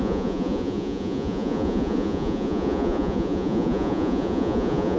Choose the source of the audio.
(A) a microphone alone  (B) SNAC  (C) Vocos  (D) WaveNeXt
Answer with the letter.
C